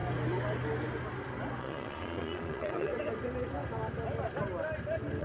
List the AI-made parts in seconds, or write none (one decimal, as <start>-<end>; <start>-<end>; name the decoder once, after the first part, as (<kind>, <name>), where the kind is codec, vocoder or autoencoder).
1.6-2.9 (vocoder, Vocos)